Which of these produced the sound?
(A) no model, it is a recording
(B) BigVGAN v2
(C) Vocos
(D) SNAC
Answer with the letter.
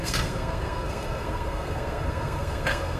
D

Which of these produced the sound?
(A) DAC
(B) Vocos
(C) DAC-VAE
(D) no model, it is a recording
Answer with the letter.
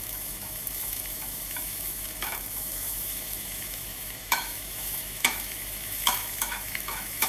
C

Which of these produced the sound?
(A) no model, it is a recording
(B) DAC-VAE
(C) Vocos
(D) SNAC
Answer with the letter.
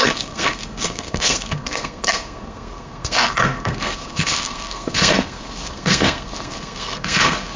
D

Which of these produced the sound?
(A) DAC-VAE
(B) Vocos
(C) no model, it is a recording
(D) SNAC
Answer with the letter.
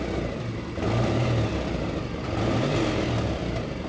C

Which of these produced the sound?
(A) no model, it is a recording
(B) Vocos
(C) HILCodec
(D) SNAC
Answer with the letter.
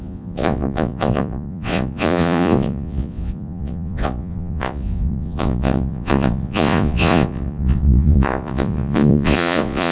B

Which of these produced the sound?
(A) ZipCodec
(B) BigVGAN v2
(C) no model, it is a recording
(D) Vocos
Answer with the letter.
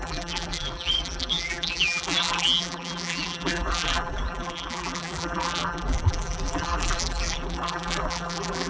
B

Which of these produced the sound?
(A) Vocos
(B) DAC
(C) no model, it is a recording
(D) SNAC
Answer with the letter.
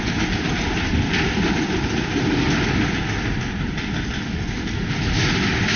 C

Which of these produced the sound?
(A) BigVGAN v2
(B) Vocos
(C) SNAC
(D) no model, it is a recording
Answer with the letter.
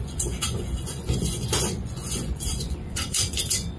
B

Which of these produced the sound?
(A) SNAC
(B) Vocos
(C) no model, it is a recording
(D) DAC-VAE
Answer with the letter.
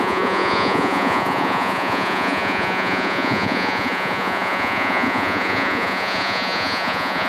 B